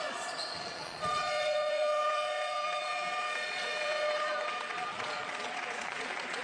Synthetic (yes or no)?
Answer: yes